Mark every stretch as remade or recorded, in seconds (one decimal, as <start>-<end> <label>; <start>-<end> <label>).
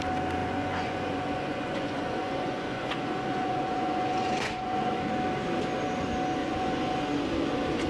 0.0-0.4 recorded; 0.4-5.1 remade; 5.1-6.4 recorded; 6.4-7.0 remade; 7.0-7.9 recorded